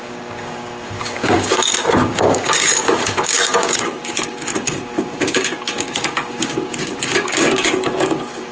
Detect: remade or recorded remade